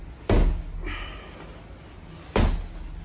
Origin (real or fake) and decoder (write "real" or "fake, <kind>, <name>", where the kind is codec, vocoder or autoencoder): real